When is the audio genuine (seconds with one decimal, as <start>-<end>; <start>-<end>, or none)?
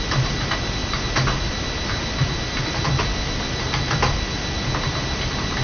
0.0-5.6